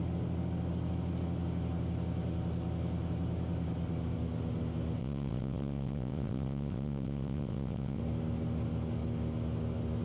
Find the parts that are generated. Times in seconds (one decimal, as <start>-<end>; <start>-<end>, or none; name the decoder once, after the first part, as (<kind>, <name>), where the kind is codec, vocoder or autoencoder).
5.0-8.0 (vocoder, WaveNeXt)